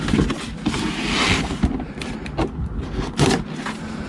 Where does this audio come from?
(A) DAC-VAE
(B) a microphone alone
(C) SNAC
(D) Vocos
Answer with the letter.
B